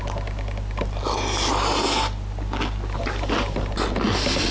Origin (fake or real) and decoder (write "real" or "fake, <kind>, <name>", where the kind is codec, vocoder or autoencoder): real